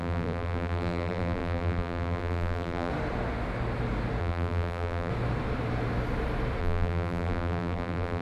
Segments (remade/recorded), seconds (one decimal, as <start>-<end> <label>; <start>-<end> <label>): 0.0-2.9 remade; 2.9-4.2 recorded; 4.2-5.1 remade; 5.1-6.6 recorded; 6.6-8.2 remade